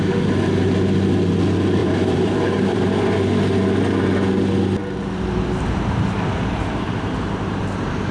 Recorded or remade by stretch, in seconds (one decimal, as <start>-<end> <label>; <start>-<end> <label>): 0.0-1.8 recorded; 1.8-3.1 remade; 3.1-4.8 recorded; 4.8-7.6 remade; 7.6-8.1 recorded